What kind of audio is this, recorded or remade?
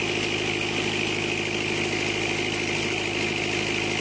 recorded